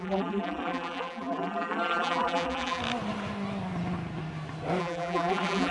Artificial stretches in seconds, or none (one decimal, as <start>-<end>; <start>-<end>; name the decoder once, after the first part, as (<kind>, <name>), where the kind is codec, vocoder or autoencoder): 0.0-2.8 (vocoder, BigVGAN v2); 4.8-5.7